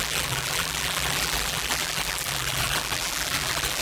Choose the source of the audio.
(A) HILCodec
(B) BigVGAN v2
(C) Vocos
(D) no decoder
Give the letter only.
B